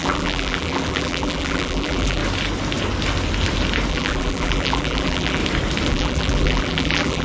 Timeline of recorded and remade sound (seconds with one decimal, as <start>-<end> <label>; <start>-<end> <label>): 0.0-2.2 remade; 2.2-3.9 recorded; 3.9-5.4 remade; 5.4-5.9 recorded; 5.9-7.2 remade